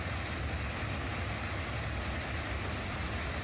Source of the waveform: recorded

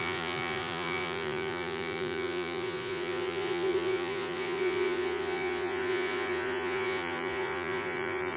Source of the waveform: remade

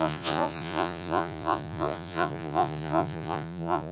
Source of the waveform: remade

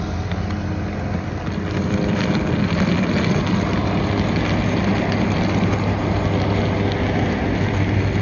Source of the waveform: recorded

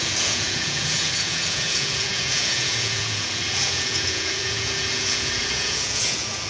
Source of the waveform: remade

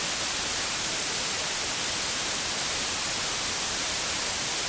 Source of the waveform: recorded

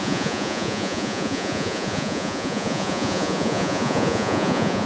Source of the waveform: remade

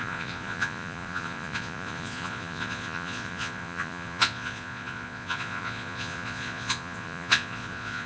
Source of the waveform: remade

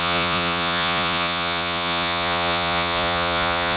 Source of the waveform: remade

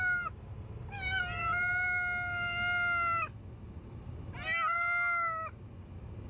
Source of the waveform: recorded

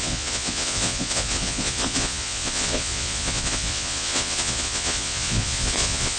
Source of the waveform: remade